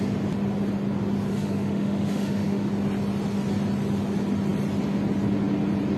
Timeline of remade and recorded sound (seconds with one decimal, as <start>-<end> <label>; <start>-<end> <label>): 0.0-1.3 recorded; 1.3-2.7 remade; 2.7-6.0 recorded